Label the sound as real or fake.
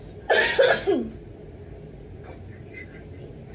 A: real